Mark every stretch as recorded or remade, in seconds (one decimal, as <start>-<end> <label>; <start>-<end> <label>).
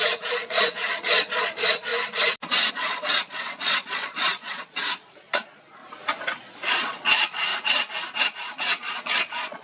0.0-1.9 remade; 1.9-2.7 recorded; 2.7-5.8 remade; 5.8-6.7 recorded; 6.7-7.5 remade; 7.5-8.2 recorded; 8.2-9.6 remade